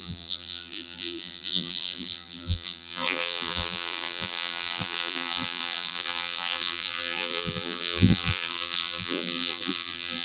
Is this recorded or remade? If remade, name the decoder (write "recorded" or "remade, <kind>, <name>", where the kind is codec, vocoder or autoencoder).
remade, vocoder, BigVGAN v2